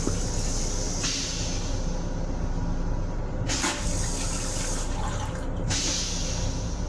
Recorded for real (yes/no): yes